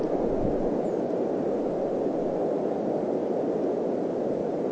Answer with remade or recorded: recorded